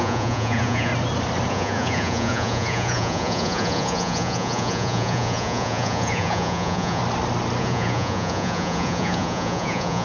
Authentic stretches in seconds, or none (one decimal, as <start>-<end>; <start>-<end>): 0.9-1.5; 7.0-7.6